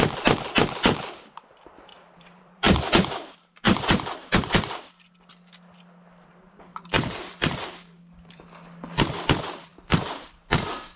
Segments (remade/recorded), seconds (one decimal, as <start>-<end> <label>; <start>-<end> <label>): 0.0-1.9 recorded; 1.9-4.8 remade; 4.8-6.7 recorded; 6.7-8.4 remade; 8.4-9.7 recorded; 9.7-11.0 remade